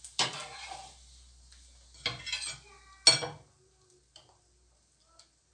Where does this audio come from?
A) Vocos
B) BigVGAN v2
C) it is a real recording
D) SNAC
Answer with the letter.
C